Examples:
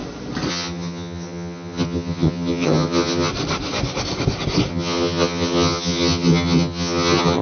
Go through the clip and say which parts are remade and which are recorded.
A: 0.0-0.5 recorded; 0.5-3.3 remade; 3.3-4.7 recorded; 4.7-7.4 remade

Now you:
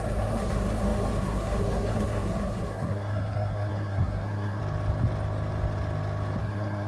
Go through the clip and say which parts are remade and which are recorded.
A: 0.0-4.6 remade; 4.6-6.4 recorded; 6.4-6.9 remade

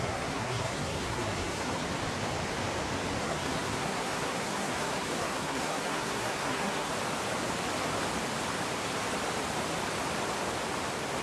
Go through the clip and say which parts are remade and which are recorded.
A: 0.0-1.8 remade; 1.8-3.2 recorded; 3.2-6.9 remade; 6.9-11.2 recorded

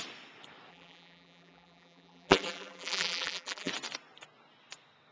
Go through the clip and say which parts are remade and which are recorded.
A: 0.0-0.7 recorded; 0.7-3.7 remade; 3.7-5.1 recorded